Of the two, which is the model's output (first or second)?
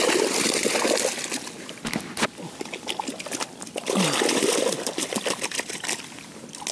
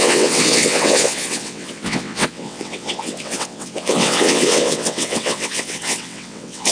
second